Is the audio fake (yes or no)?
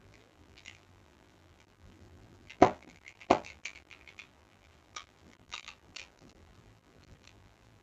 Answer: yes